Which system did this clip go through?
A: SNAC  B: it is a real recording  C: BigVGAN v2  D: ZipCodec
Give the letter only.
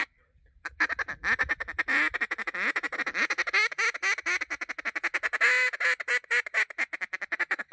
B